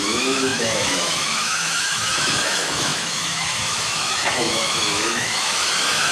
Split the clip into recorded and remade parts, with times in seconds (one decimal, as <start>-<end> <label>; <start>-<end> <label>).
0.0-6.1 remade

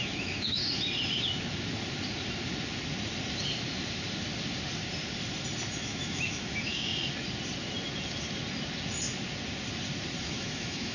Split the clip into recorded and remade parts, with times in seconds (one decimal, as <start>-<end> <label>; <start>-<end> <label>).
0.0-0.6 remade; 0.6-5.8 recorded; 5.8-6.9 remade; 6.9-10.2 recorded; 10.2-10.9 remade